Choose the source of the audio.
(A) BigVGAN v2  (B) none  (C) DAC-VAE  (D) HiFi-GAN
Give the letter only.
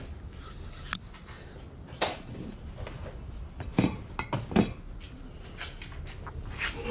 B